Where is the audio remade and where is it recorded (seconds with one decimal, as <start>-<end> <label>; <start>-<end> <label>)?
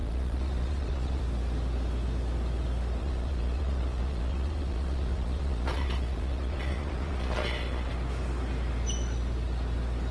0.0-1.2 remade; 1.2-3.0 recorded; 3.0-7.9 remade; 7.9-10.1 recorded